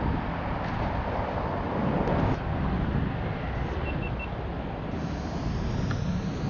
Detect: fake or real real